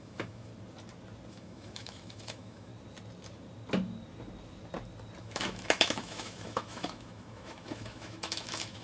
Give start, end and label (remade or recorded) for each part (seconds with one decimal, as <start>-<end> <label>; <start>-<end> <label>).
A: 0.0-0.5 remade; 0.5-1.3 recorded; 1.3-2.7 remade; 2.7-5.2 recorded; 5.2-8.8 remade